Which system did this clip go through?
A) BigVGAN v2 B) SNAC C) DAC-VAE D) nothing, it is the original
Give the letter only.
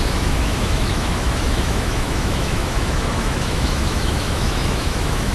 C